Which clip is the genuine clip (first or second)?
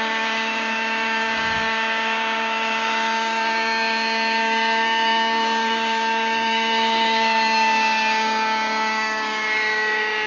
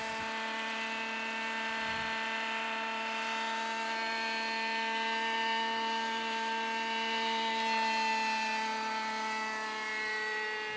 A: second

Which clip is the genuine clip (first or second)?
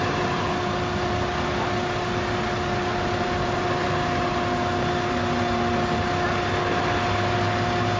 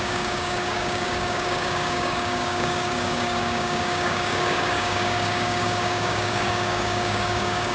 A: first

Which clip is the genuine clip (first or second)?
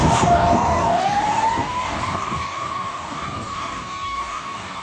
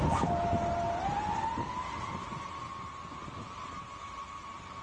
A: second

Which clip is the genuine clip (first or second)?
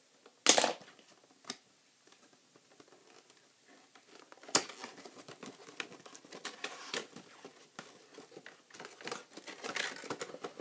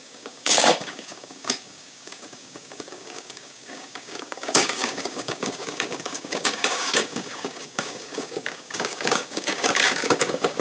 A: first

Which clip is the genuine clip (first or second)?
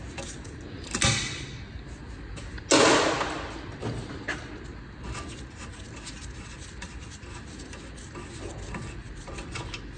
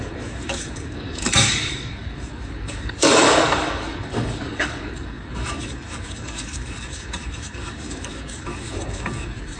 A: first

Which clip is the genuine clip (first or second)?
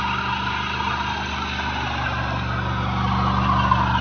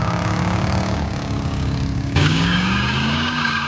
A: first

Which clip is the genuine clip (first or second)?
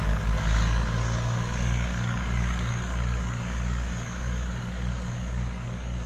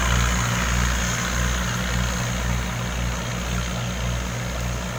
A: second